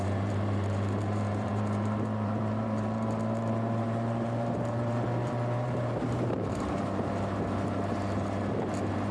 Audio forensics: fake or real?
fake